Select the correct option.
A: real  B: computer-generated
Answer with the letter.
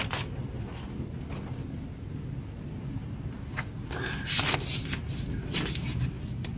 A